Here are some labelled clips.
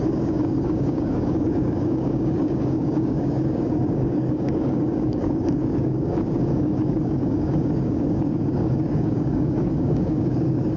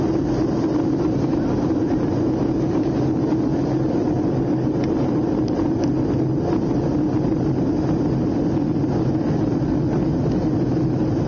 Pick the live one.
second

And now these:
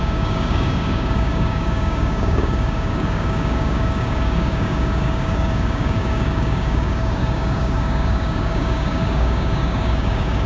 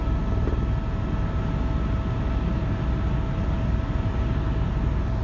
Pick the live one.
second